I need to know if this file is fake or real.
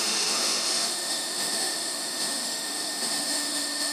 fake